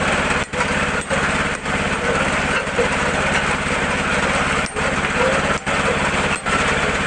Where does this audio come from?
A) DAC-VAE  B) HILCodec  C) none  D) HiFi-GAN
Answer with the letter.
C